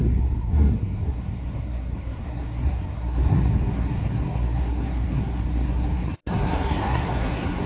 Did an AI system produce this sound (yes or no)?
yes